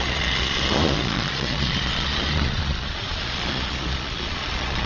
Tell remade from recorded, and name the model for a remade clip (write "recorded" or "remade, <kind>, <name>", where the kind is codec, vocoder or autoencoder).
remade, vocoder, Vocos